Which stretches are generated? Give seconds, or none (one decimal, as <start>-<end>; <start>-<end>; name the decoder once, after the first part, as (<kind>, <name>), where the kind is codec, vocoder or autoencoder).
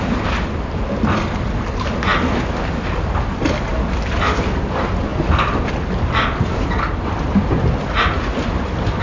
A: none